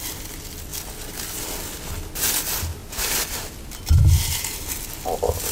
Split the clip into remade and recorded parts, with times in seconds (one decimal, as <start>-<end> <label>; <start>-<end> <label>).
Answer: 0.0-5.5 recorded